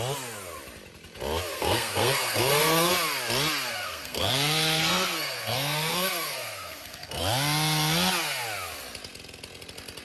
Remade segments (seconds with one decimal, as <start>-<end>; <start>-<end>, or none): 1.5-2.9; 3.7-7.2